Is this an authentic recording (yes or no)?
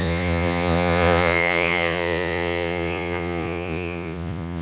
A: no